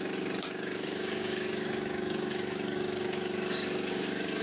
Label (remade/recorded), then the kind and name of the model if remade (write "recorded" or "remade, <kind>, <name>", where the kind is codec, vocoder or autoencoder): remade, codec, DAC